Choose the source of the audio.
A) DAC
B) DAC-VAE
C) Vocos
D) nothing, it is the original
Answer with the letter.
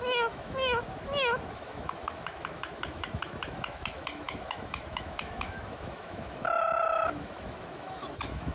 B